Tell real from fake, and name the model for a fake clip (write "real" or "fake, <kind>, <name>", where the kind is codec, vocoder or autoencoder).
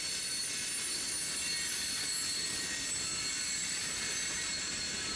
real